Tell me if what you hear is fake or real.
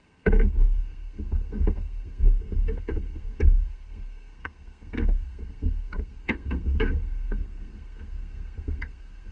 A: fake